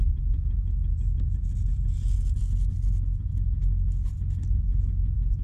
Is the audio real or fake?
real